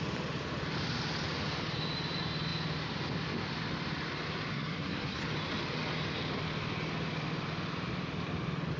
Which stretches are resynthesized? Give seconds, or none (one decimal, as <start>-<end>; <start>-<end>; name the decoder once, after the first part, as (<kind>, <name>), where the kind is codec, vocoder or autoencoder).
4.5-5.2 (codec, SNAC)